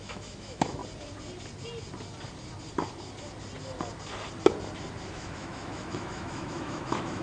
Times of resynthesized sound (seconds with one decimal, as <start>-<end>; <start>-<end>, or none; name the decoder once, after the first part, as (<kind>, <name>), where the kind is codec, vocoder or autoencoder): 0.0-0.8 (autoencoder, DAC-VAE); 5.1-7.2